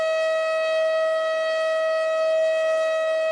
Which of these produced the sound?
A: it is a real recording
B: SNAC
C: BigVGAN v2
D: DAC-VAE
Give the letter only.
A